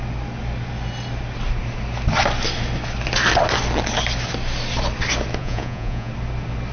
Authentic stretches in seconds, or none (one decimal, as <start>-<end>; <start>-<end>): 0.0-5.4; 6.1-6.7